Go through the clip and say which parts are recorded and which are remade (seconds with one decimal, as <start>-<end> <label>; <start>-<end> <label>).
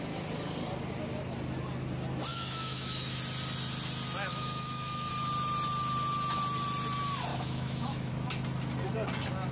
0.0-2.3 recorded; 2.3-3.2 remade; 3.2-4.3 recorded; 4.3-5.1 remade; 5.1-7.3 recorded; 7.3-8.1 remade; 8.1-9.5 recorded